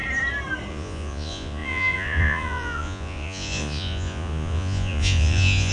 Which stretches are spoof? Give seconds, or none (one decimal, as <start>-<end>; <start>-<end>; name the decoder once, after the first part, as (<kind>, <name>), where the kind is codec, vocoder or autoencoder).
0.7-5.7 (vocoder, Vocos)